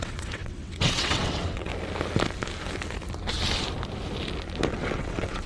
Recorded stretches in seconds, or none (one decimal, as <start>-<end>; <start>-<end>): 1.7-4.7